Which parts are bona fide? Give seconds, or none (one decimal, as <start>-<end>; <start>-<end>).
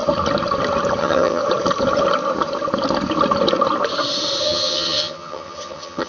0.0-1.0; 1.4-4.4